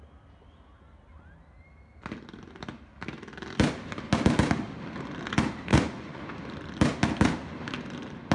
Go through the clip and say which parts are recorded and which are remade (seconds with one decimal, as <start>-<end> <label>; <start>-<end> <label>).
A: 0.0-5.7 recorded; 5.7-6.2 remade; 6.2-8.3 recorded